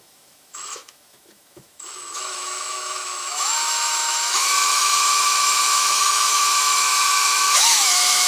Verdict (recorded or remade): remade